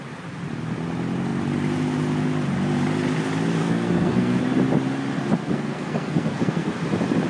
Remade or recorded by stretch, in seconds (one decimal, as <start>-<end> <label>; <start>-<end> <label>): 0.0-3.6 recorded; 3.6-4.4 remade; 4.4-5.4 recorded; 5.4-6.7 remade; 6.7-7.3 recorded